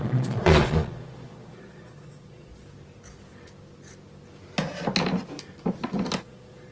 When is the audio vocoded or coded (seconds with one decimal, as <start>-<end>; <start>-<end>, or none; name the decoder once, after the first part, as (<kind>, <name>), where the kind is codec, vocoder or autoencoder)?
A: 0.0-2.5 (vocoder, Vocos); 6.2-6.7